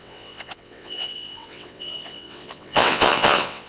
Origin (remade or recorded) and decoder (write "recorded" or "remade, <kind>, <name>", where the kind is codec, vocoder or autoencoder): remade, vocoder, WaveNeXt